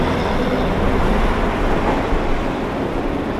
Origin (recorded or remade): remade